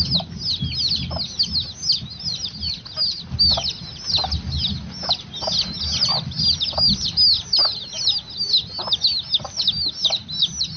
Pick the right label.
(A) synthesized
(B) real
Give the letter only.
B